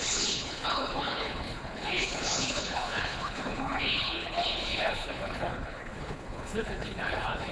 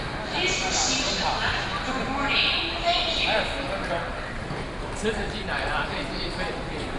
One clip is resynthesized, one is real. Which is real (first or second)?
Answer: second